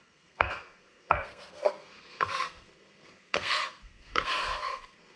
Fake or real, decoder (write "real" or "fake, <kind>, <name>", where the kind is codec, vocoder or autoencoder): fake, codec, SNAC